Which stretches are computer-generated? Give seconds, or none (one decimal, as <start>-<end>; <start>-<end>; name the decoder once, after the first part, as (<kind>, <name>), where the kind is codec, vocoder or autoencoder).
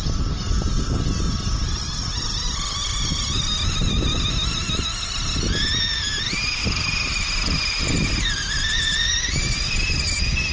none